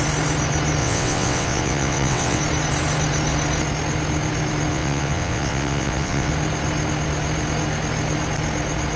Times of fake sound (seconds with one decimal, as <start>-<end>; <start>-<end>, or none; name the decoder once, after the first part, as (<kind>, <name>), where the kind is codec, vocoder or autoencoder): 0.8-2.4 (vocoder, WaveNeXt); 4.7-6.3